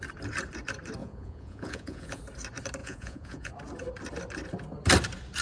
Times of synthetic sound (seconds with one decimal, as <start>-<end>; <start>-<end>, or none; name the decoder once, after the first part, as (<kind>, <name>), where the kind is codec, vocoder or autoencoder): 1.0-2.2 (vocoder, Vocos); 2.8-3.5